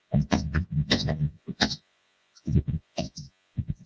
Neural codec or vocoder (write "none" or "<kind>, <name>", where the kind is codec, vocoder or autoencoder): vocoder, Vocos